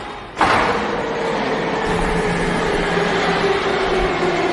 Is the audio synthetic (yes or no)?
no